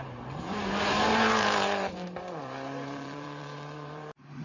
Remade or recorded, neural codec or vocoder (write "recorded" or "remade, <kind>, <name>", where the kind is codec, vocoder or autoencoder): remade, vocoder, BigVGAN v2